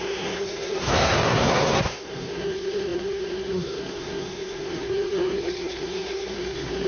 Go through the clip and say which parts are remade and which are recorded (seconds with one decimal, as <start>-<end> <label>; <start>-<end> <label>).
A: 0.0-6.9 remade